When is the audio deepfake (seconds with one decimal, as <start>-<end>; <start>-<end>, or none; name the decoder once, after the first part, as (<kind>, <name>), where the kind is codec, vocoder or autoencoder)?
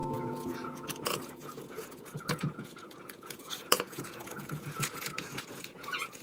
0.0-6.2 (vocoder, Vocos)